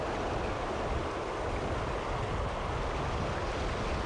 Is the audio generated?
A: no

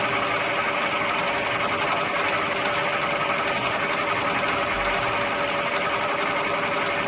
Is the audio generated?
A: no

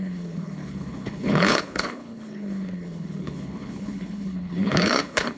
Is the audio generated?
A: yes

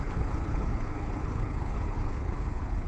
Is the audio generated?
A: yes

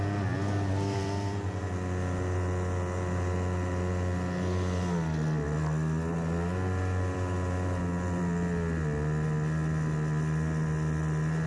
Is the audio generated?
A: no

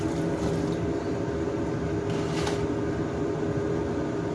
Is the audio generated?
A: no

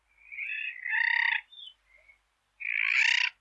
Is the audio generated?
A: no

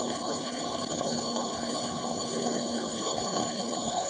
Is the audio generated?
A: yes